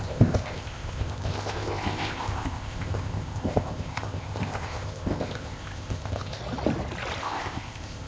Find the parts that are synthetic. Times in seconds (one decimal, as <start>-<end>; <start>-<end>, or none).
0.0-6.4; 7.2-8.1